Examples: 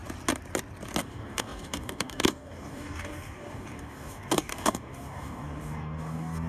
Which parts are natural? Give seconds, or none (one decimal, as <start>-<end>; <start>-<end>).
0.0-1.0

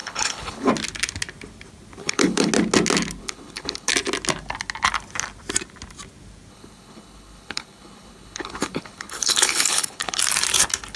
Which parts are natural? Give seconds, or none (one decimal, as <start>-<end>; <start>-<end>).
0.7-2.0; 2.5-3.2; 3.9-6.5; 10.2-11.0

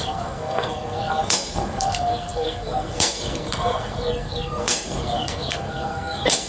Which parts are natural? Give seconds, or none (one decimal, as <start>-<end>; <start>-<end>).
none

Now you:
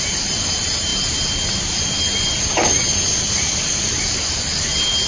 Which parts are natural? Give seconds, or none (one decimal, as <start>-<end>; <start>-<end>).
0.0-5.1